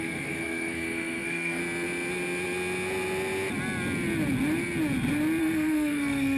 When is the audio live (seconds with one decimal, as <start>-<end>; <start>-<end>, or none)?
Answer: 1.6-5.4